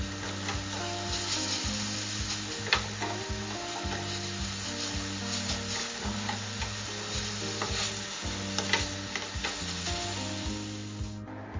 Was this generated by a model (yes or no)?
no